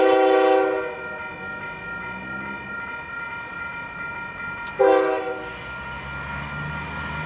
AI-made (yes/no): no